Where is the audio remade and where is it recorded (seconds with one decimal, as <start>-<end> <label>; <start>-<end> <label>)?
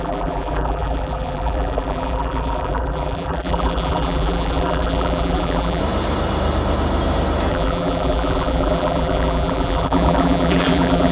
0.0-5.8 remade; 5.8-7.5 recorded; 7.5-11.1 remade